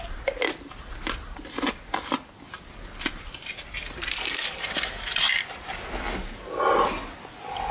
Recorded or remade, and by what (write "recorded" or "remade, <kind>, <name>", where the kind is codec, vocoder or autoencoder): recorded